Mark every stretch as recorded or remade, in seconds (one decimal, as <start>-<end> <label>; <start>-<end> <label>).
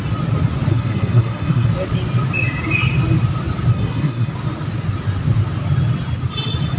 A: 0.0-0.7 recorded; 0.7-1.7 remade; 1.7-3.7 recorded; 3.7-4.3 remade; 4.3-6.8 recorded